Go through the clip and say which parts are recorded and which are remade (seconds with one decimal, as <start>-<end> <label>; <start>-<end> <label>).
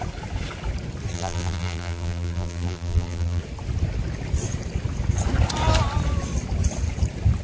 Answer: 0.0-1.1 recorded; 1.1-3.4 remade; 3.4-7.4 recorded